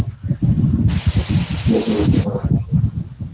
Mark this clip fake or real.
real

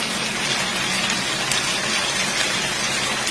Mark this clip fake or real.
real